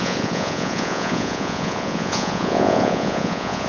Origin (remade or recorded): remade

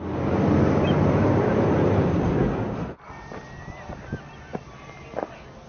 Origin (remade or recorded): recorded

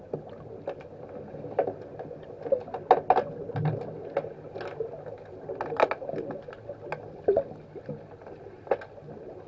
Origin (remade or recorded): recorded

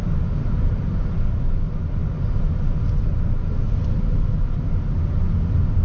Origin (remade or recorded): recorded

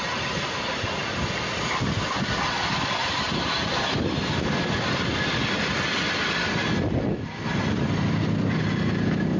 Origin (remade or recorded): recorded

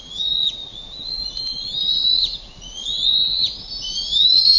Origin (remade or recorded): remade